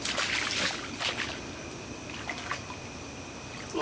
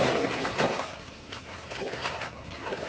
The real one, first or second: first